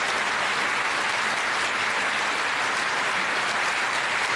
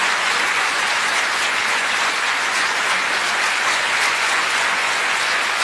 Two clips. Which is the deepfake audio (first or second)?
second